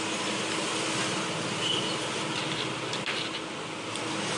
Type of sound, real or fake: real